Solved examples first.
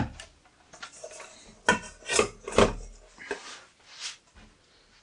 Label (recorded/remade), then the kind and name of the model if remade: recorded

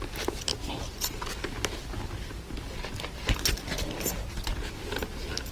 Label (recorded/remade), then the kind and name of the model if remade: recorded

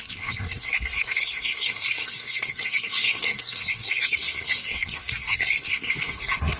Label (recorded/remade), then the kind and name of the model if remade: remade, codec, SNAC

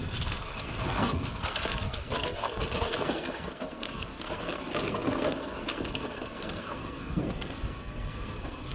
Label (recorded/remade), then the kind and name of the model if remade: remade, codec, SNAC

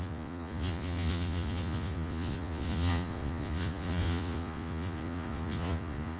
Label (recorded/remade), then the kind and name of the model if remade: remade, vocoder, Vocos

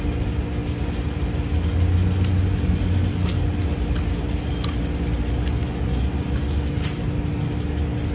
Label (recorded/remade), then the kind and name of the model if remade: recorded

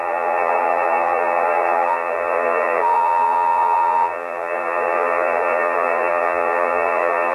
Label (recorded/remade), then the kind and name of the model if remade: remade, vocoder, BigVGAN v2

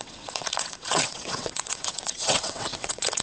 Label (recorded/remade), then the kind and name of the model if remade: remade, vocoder, WaveNeXt